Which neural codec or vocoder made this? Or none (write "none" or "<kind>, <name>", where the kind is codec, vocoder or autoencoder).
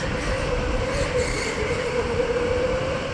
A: none